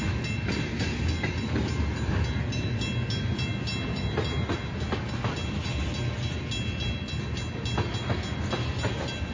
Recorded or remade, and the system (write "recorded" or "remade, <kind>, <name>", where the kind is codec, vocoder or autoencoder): recorded